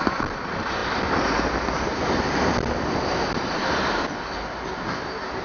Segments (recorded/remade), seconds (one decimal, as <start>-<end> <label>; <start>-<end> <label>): 0.0-5.4 recorded